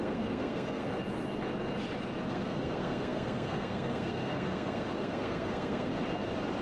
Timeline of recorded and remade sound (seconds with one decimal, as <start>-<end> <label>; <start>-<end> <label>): 0.0-0.9 remade; 0.9-2.3 recorded; 2.3-5.9 remade; 5.9-6.6 recorded